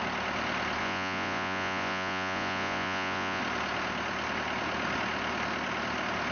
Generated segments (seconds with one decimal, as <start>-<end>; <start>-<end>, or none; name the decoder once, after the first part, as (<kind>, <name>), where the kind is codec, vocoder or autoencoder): 0.8-3.4 (vocoder, Vocos)